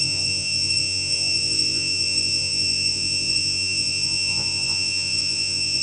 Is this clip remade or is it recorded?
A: remade